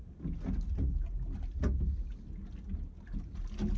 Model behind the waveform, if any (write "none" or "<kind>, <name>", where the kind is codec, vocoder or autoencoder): none